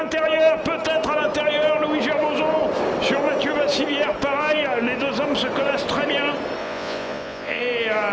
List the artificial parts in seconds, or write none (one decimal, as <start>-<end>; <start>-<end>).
6.6-7.6